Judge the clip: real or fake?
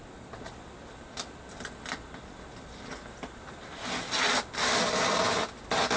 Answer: real